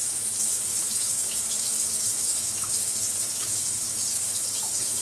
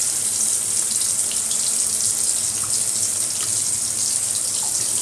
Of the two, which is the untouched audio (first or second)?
second